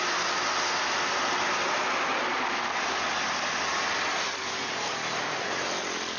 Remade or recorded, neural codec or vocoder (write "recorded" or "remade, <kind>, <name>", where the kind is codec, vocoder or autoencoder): recorded